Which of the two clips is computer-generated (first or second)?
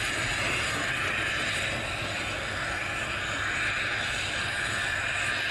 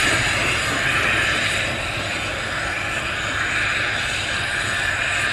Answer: second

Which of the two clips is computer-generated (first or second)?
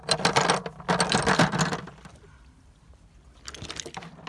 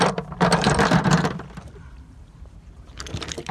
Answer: second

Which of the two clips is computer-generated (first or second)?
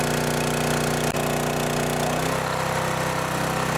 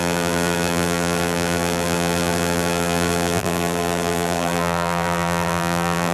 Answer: second